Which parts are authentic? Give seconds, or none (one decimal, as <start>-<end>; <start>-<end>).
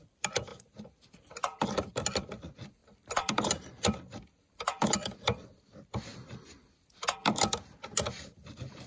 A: 0.0-2.8; 4.3-8.9